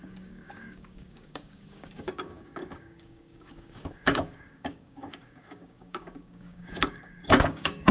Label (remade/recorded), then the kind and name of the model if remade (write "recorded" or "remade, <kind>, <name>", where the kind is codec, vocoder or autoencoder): remade, codec, DAC